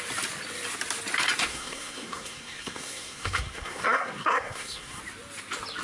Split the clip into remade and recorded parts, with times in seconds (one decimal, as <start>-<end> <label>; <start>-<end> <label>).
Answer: 0.0-1.5 recorded; 1.5-5.0 remade; 5.0-5.8 recorded